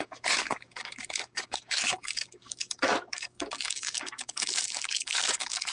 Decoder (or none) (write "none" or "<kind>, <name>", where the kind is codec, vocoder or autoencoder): codec, DAC